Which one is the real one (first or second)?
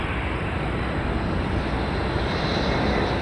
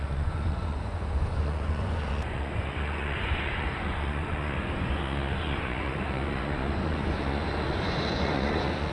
first